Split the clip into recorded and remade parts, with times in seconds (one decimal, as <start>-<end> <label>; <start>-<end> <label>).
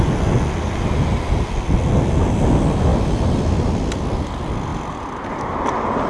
0.0-6.1 recorded